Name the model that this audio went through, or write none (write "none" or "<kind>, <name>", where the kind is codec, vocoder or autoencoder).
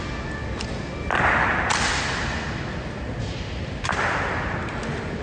none